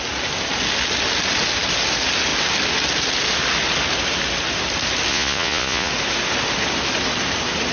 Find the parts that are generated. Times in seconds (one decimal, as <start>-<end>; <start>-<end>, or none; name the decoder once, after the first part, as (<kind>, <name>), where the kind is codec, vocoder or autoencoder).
5.1-5.9 (vocoder, Vocos)